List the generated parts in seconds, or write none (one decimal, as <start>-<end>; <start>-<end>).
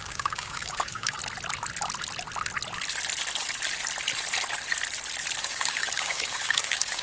0.0-1.2; 5.4-7.0